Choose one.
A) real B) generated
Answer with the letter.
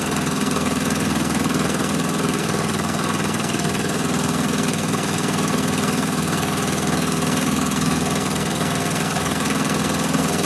B